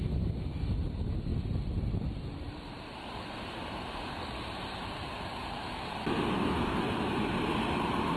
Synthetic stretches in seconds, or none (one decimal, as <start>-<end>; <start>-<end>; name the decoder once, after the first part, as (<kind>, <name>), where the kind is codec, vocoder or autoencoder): 1.3-6.0 (vocoder, BigVGAN v2)